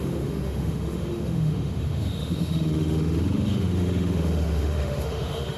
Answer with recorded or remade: remade